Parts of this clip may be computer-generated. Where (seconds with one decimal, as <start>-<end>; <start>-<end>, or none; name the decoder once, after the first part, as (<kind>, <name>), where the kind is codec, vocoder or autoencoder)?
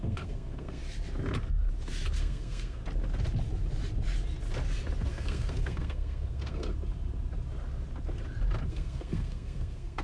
0.0-0.8 (codec, SNAC); 2.2-2.8; 5.1-6.7; 8.7-10.0